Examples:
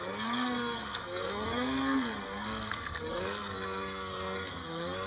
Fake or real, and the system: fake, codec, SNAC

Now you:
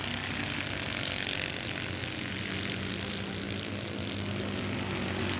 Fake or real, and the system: real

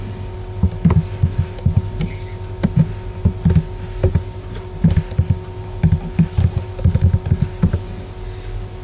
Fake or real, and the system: real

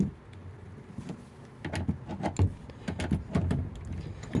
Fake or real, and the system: real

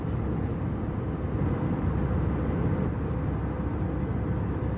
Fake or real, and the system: real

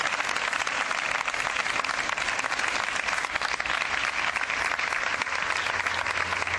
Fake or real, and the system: real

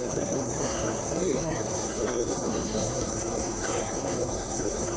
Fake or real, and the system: fake, codec, SNAC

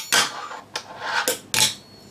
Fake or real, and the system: real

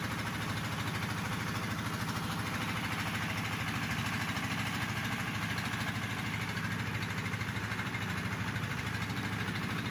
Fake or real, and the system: real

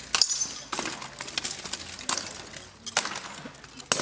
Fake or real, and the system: real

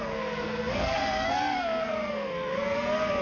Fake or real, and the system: fake, codec, SNAC